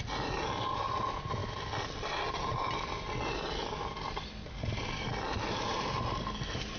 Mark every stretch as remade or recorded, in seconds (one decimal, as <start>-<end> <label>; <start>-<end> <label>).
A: 0.0-6.8 recorded